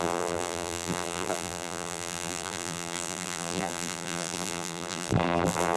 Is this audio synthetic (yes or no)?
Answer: yes